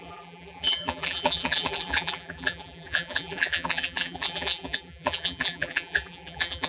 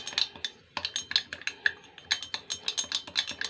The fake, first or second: first